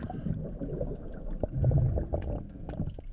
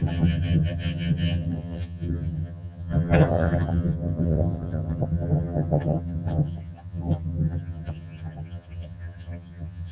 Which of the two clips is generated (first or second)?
second